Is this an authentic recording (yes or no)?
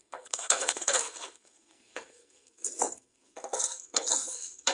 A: no